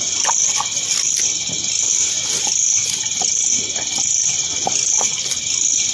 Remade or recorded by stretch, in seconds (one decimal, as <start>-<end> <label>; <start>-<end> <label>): 0.0-5.9 recorded